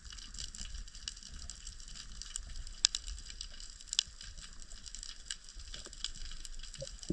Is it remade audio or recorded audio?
recorded